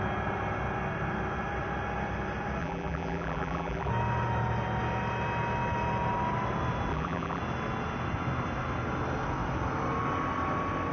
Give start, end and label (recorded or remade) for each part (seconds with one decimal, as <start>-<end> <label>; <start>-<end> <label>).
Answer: 0.0-2.6 recorded; 2.6-3.9 remade; 3.9-6.9 recorded; 6.9-7.4 remade; 7.4-10.9 recorded